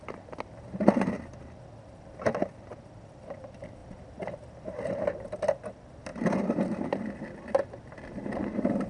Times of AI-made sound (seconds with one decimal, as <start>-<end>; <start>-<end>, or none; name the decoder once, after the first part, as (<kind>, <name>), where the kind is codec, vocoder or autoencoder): none